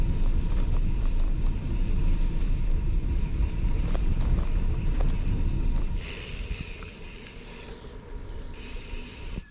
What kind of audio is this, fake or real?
fake